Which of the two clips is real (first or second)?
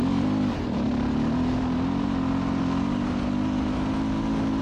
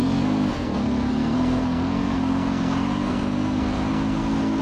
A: first